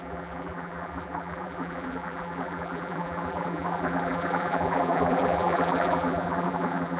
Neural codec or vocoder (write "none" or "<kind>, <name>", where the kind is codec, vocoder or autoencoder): vocoder, BigVGAN v2